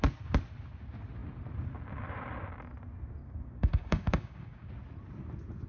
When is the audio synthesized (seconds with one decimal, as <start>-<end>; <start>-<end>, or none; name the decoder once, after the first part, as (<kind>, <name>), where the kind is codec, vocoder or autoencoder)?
3.2-4.7 (codec, DAC)